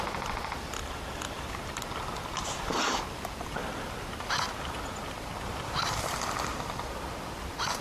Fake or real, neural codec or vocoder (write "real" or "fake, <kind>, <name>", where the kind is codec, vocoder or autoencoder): real